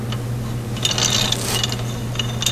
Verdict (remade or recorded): recorded